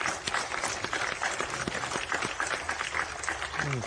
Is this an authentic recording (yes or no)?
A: yes